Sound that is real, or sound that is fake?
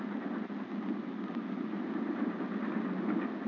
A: real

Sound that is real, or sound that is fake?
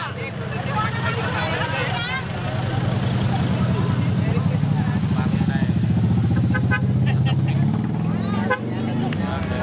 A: real